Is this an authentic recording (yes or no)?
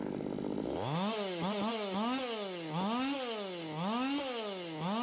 yes